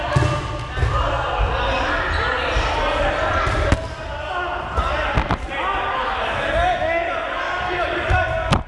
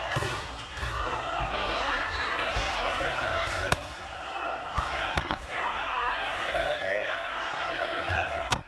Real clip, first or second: first